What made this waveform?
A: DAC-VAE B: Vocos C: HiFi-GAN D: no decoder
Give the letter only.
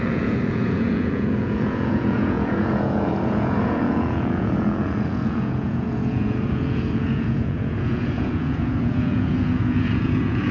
B